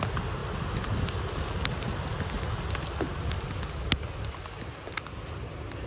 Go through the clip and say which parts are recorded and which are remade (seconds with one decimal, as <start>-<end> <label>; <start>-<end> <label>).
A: 0.0-5.9 recorded